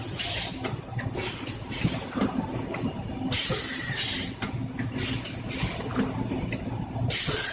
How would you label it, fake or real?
real